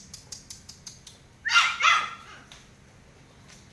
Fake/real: real